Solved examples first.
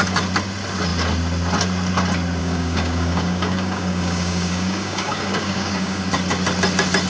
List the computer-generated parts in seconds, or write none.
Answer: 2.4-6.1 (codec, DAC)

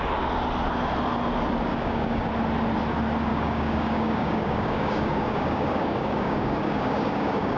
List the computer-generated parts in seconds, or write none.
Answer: 1.7-2.3 (codec, DAC); 3.3-7.6

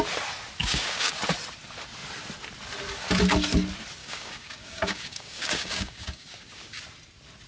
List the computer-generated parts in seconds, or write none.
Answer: 0.6-1.2 (codec, DAC); 4.0-6.8